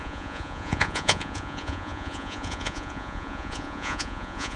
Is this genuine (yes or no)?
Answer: no